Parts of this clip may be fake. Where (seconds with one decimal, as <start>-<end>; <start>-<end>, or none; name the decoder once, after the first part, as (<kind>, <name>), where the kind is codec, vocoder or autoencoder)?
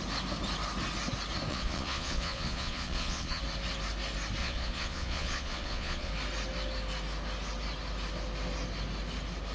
1.5-3.4 (vocoder, Vocos); 4.4-6.1